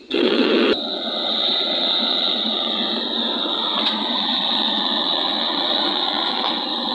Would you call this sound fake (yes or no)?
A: yes